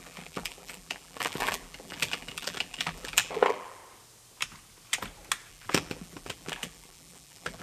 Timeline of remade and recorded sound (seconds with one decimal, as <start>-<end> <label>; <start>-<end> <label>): 0.0-3.8 remade; 3.8-5.5 recorded; 5.5-7.6 remade